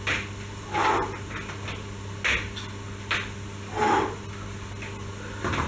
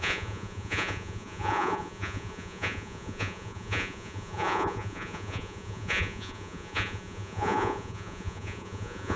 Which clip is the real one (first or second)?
first